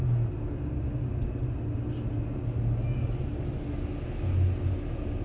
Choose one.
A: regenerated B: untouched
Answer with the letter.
B